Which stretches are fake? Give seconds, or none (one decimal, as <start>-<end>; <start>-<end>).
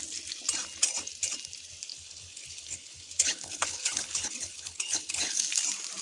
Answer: 1.9-5.4